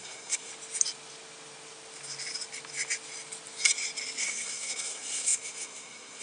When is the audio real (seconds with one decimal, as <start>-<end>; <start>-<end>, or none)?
0.5-4.2